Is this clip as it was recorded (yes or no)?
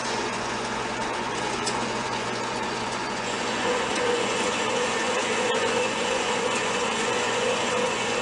no